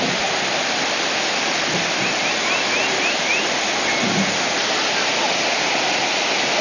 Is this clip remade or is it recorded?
recorded